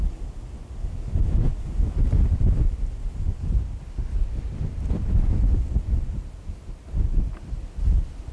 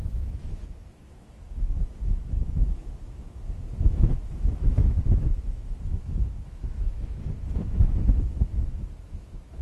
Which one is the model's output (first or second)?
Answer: second